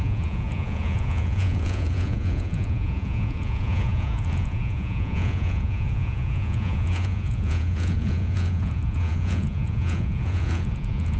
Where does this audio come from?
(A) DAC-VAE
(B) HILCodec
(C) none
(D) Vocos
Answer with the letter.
D